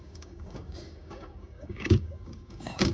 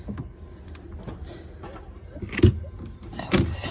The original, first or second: second